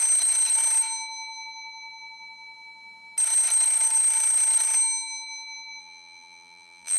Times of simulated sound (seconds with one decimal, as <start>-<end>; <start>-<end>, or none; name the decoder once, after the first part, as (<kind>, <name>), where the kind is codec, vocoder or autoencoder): 5.8-7.0 (vocoder, BigVGAN v2)

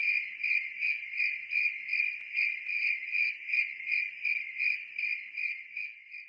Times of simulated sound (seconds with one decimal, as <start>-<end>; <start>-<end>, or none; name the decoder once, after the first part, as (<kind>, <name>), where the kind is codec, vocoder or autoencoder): none

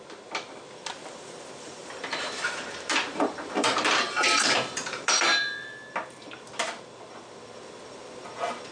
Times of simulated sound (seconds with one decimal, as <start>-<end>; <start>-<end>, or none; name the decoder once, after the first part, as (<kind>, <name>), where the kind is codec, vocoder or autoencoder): 1.8-5.7 (vocoder, BigVGAN v2)